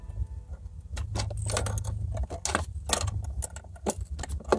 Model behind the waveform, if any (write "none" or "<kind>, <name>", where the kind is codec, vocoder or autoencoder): none